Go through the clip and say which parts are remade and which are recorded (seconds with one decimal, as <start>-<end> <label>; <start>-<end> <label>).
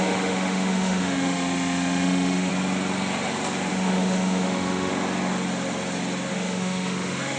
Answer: 0.0-2.5 remade; 2.5-3.7 recorded; 3.7-4.9 remade; 4.9-6.3 recorded; 6.3-7.4 remade